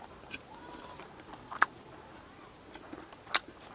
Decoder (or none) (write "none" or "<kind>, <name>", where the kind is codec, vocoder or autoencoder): none